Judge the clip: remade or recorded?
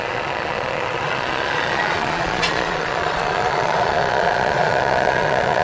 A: remade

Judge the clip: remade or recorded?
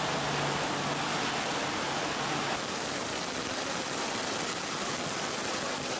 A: recorded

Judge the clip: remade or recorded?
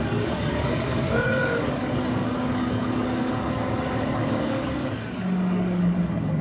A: remade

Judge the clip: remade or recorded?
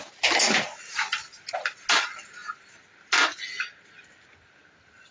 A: recorded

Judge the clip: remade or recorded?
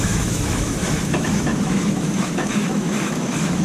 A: remade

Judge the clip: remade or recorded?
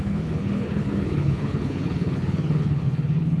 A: remade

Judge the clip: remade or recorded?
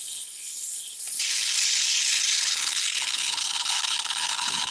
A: remade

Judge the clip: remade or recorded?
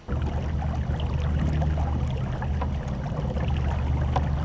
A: recorded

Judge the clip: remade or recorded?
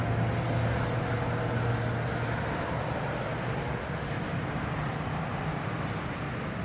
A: recorded